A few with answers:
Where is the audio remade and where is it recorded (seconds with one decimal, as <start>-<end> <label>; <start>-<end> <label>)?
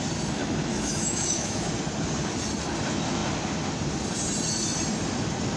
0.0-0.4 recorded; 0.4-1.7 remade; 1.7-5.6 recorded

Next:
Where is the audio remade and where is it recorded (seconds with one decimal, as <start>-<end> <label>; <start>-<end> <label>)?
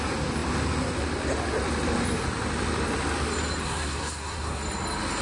0.0-3.6 recorded; 3.6-4.6 remade; 4.6-5.2 recorded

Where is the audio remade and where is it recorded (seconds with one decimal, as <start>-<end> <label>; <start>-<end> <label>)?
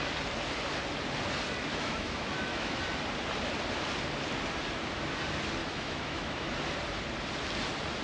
0.0-1.7 recorded; 1.7-2.8 remade; 2.8-5.6 recorded; 5.6-6.5 remade; 6.5-8.0 recorded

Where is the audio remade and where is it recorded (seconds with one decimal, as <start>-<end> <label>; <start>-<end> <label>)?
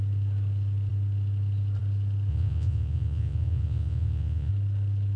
0.0-2.3 recorded; 2.3-4.5 remade; 4.5-5.2 recorded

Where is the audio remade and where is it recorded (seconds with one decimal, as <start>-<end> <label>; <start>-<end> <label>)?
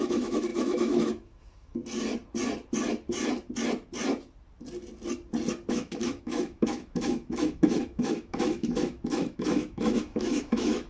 0.0-1.8 remade; 1.8-5.7 recorded; 5.7-10.9 remade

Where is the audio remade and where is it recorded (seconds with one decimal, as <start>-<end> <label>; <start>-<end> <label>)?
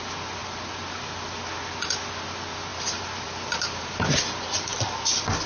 0.0-2.7 recorded; 2.7-4.2 remade; 4.2-5.5 recorded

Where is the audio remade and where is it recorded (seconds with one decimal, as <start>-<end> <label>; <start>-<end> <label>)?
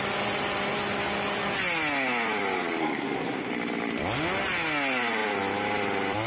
0.0-2.8 recorded; 2.8-3.5 remade; 3.5-6.3 recorded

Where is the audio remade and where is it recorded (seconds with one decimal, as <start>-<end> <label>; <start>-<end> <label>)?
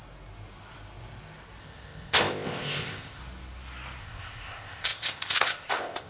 0.0-1.6 recorded; 1.6-3.2 remade; 3.2-4.0 recorded; 4.0-6.1 remade